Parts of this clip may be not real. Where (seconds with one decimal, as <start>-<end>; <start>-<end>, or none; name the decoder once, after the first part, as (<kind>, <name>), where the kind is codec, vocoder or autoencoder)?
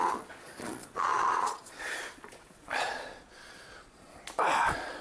0.0-4.1 (vocoder, Vocos)